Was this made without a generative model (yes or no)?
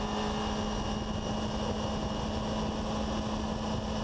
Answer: yes